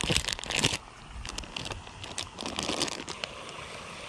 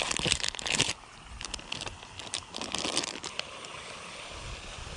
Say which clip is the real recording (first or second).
first